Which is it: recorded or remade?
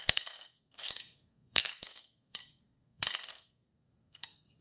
remade